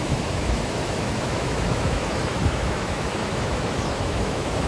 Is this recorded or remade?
remade